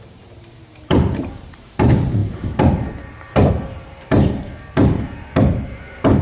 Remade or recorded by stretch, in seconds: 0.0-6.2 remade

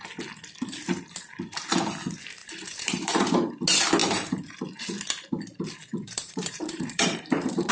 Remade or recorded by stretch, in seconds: 0.0-2.4 recorded; 2.4-3.5 remade; 3.5-4.0 recorded; 4.0-4.6 remade; 4.6-5.9 recorded; 5.9-7.7 remade